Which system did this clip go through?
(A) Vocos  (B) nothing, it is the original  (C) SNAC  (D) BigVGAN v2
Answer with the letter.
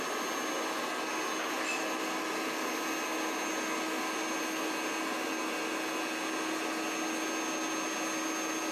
B